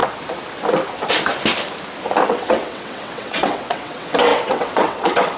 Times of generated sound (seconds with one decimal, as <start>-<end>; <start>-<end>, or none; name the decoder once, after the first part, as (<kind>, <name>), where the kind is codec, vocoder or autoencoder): 2.3-5.4 (vocoder, WaveNeXt)